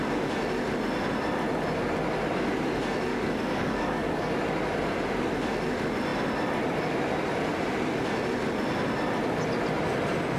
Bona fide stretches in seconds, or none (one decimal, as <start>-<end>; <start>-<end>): 0.0-3.1; 4.3-10.4